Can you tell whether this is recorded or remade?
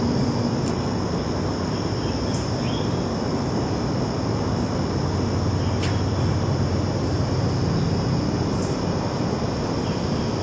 recorded